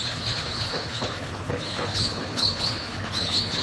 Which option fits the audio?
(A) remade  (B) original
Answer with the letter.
A